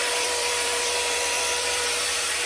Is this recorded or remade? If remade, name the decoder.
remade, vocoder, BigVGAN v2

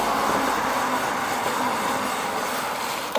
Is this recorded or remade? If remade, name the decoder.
recorded